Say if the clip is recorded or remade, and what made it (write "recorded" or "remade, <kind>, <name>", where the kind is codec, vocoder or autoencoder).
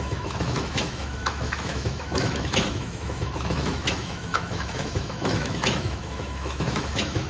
remade, autoencoder, DAC-VAE